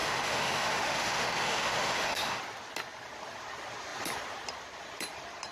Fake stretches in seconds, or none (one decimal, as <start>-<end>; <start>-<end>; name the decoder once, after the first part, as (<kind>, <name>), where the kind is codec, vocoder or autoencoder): 0.0-2.4 (autoencoder, DAC-VAE)